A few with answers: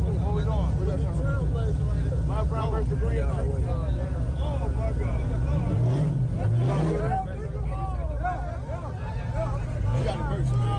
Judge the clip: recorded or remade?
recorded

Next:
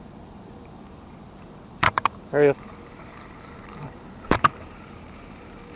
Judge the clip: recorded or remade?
remade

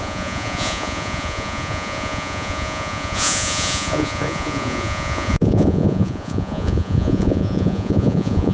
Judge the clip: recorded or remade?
remade